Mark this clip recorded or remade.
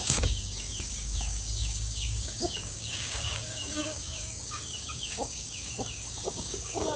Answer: remade